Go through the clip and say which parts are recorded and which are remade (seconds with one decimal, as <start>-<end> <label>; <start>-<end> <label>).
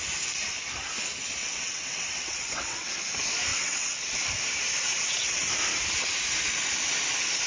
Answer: 0.0-1.4 recorded; 1.4-2.9 remade; 2.9-3.5 recorded; 3.5-4.2 remade; 4.2-4.9 recorded; 4.9-5.4 remade; 5.4-7.5 recorded